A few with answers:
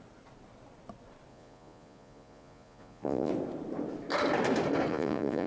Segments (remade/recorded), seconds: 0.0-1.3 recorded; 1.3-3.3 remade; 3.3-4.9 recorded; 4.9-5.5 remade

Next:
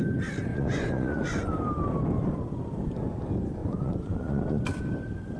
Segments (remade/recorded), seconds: 0.0-0.5 recorded; 0.5-1.5 remade; 1.5-3.6 recorded; 3.6-4.8 remade; 4.8-5.4 recorded

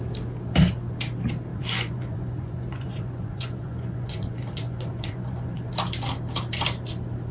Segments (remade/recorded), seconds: 0.0-1.5 recorded; 1.5-5.7 remade; 5.7-7.3 recorded

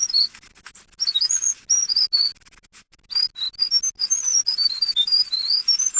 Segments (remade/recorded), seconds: 0.0-6.0 recorded

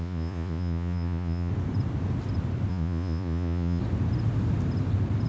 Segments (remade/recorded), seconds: 0.0-1.5 remade; 1.5-2.7 recorded; 2.7-3.8 remade; 3.8-5.3 recorded

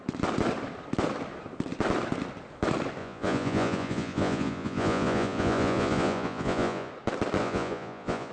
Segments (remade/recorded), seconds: 0.0-3.0 recorded; 3.0-6.9 remade; 6.9-7.4 recorded; 7.4-8.3 remade

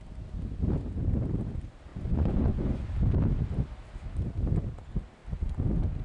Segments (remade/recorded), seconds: 0.0-1.9 recorded; 1.9-2.9 remade; 2.9-6.0 recorded